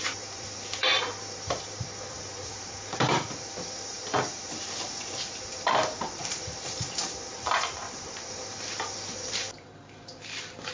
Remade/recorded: remade